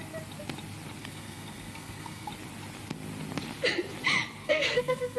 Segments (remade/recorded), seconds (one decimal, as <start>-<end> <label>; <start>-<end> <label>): 0.0-1.0 recorded; 1.0-2.3 remade; 2.3-4.4 recorded; 4.4-5.2 remade